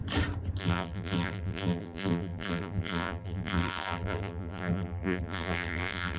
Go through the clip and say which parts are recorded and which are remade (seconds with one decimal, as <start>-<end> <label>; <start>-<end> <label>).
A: 0.0-0.6 recorded; 0.6-6.2 remade